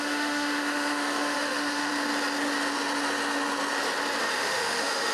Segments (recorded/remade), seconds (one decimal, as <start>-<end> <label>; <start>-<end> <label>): 0.0-1.9 remade; 1.9-4.2 recorded; 4.2-5.1 remade

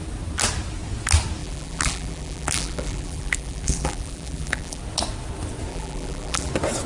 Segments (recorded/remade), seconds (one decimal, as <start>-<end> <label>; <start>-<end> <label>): 0.0-1.4 recorded; 1.4-4.8 remade; 4.8-5.7 recorded; 5.7-6.5 remade; 6.5-6.9 recorded

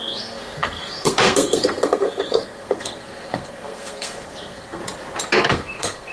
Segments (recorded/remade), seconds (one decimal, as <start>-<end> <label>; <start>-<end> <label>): 0.0-4.8 remade; 4.8-5.5 recorded; 5.5-6.1 remade

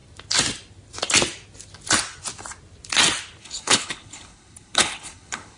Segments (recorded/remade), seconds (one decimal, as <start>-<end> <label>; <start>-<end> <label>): 0.0-3.4 recorded; 3.4-5.6 remade

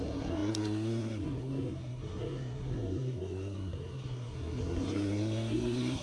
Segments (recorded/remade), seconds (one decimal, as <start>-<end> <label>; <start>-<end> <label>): 0.0-6.0 remade

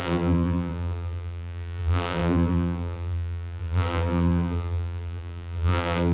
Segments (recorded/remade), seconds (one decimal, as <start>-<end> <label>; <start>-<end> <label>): 0.0-6.1 remade

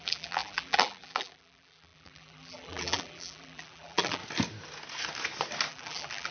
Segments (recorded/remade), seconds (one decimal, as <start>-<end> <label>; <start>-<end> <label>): 0.0-4.2 remade; 4.2-5.7 recorded; 5.7-6.3 remade

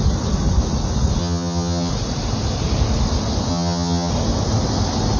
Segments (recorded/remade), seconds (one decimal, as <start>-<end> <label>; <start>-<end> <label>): 0.0-1.2 recorded; 1.2-1.9 remade; 1.9-3.5 recorded; 3.5-4.1 remade; 4.1-5.2 recorded